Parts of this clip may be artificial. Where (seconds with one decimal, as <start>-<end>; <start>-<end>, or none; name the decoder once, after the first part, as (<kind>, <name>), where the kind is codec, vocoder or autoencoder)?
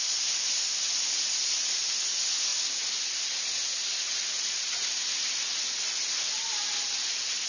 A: none